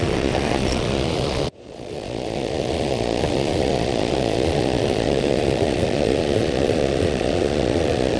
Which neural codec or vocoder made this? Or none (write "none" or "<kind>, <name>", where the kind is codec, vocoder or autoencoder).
vocoder, Vocos